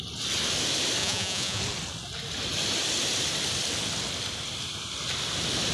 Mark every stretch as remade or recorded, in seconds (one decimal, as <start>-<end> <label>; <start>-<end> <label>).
0.0-1.0 recorded; 1.0-1.6 remade; 1.6-5.7 recorded